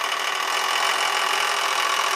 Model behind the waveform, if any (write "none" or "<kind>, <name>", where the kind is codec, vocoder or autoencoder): none